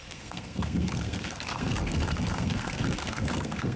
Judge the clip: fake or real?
fake